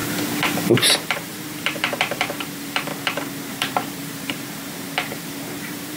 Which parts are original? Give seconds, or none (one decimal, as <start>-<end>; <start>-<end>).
0.0-0.7; 2.9-3.5